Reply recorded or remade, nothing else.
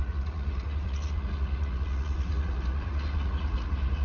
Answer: remade